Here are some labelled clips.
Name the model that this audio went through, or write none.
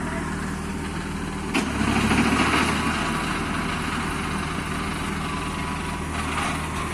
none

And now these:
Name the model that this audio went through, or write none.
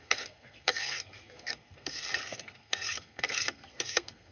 codec, SNAC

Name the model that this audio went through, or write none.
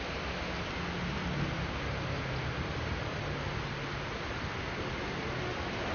none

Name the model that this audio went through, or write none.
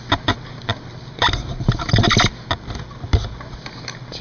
none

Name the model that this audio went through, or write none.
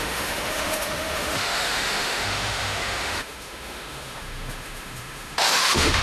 autoencoder, DAC-VAE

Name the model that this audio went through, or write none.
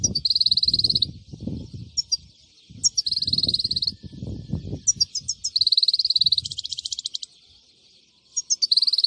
none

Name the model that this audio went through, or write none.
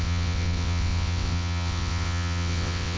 vocoder, WaveNeXt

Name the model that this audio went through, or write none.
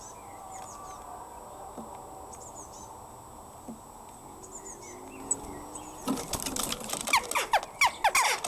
none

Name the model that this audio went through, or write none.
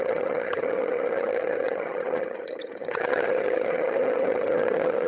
vocoder, HiFi-GAN